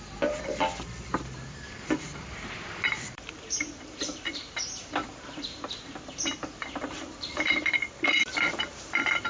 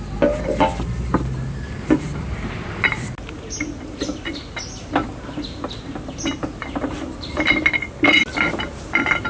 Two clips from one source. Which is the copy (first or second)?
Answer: first